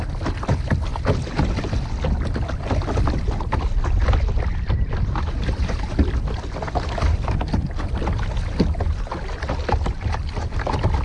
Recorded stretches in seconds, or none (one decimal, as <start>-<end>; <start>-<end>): 0.0-11.0